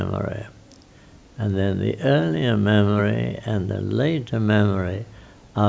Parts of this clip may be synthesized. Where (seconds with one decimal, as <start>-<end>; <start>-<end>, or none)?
none